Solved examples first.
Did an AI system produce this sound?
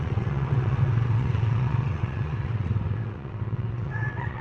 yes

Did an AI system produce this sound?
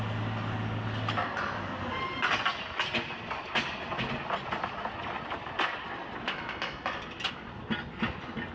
no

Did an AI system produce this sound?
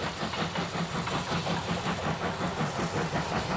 no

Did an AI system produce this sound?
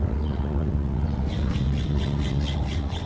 yes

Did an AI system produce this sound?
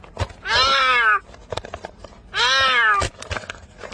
no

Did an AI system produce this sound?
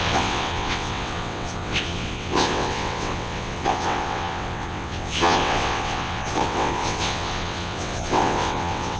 yes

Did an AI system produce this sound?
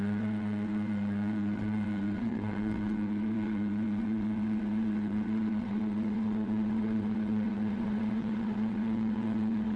yes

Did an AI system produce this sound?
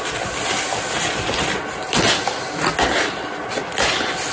no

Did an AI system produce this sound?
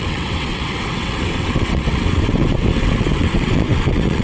yes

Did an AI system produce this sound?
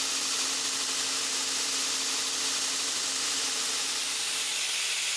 no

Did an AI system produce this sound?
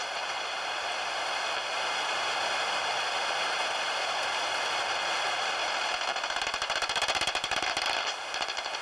no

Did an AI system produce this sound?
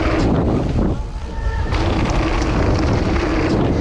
no